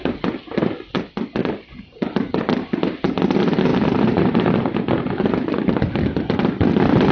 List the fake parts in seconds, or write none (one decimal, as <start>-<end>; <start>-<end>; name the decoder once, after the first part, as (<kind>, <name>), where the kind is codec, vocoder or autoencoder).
1.4-3.2 (vocoder, BigVGAN v2); 3.7-6.0